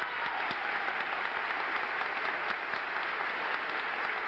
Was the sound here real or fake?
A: real